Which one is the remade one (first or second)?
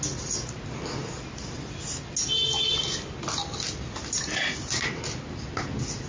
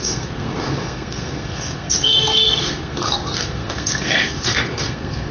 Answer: second